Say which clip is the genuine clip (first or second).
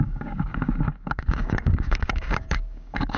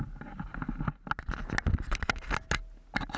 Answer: second